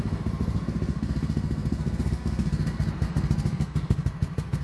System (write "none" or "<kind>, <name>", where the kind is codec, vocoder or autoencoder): codec, SNAC